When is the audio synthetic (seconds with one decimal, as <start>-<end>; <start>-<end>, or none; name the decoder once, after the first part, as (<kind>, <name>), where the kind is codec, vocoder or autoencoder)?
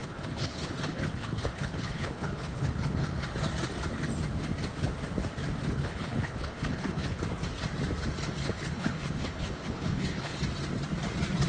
0.0-3.2 (codec, HILCodec); 5.6-7.2; 8.4-10.4